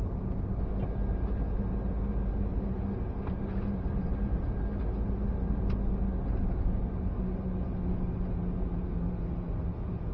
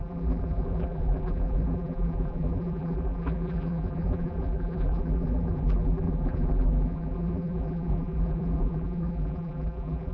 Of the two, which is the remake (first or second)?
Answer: second